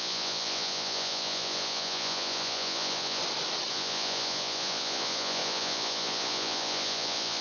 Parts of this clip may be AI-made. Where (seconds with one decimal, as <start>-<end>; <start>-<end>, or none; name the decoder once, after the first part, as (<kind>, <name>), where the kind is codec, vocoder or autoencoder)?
0.0-3.2 (vocoder, Vocos); 3.7-7.4